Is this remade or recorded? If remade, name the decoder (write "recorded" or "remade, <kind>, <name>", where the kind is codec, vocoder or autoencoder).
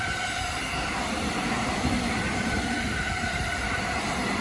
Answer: remade, vocoder, BigVGAN v2